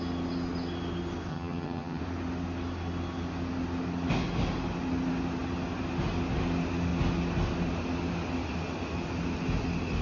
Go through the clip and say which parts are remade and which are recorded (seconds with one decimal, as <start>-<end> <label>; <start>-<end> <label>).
0.0-1.3 recorded; 1.3-2.0 remade; 2.0-10.0 recorded